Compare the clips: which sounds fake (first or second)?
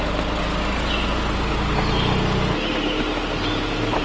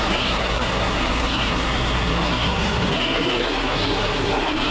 second